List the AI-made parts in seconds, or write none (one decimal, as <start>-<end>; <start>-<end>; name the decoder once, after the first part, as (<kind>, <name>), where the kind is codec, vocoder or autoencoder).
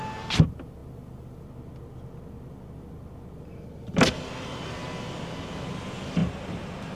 none